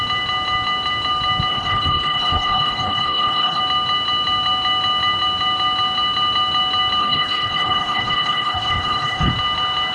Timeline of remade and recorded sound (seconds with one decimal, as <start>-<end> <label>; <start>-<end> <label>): 0.0-1.5 recorded; 1.5-3.6 remade; 3.6-7.0 recorded; 7.0-9.3 remade; 9.3-9.9 recorded